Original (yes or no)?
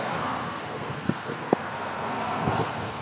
no